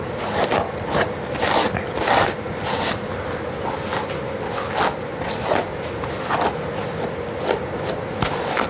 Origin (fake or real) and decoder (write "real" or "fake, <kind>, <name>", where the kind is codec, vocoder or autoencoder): real